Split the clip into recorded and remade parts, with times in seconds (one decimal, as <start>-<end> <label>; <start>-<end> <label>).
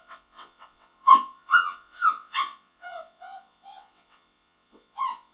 0.0-5.3 remade